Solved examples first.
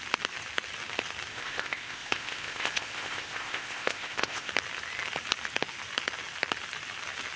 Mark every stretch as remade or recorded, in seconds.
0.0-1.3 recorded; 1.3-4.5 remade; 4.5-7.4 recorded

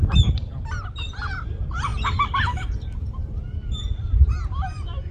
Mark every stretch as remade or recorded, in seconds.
0.0-5.1 recorded